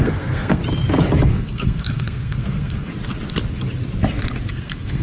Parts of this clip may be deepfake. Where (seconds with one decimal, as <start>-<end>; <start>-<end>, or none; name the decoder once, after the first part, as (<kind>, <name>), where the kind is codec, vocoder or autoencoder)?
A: 0.0-0.6 (codec, SNAC); 1.3-2.9; 4.5-5.0